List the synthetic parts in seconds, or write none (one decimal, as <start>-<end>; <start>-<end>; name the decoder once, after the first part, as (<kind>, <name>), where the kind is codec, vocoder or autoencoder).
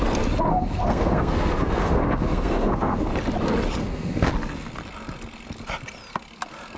0.5-3.1 (codec, SNAC); 3.8-4.3